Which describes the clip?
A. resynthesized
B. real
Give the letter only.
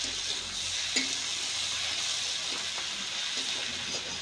B